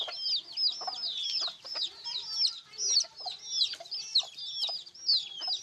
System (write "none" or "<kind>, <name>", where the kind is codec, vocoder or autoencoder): none